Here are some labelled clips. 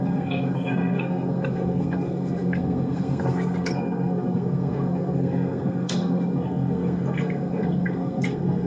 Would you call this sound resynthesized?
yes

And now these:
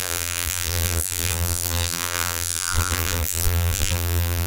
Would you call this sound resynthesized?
yes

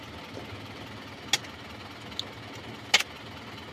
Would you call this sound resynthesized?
no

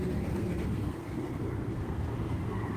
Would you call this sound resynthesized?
yes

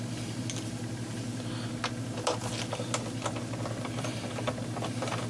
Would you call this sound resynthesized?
no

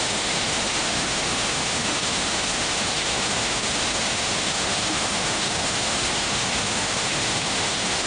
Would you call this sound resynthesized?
yes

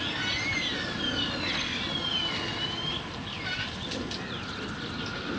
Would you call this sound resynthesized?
no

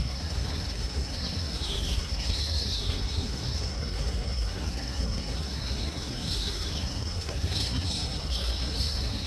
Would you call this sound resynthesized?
yes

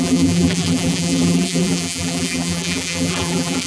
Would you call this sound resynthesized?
yes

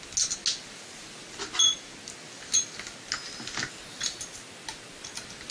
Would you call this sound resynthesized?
no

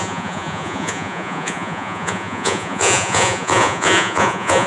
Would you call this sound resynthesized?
yes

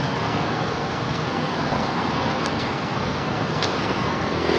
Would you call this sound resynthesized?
yes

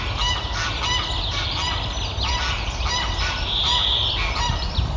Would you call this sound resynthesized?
no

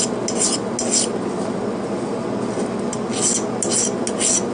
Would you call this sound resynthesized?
no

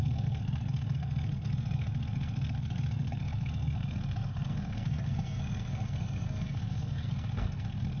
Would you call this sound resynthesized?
yes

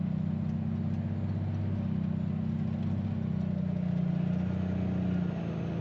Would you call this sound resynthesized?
no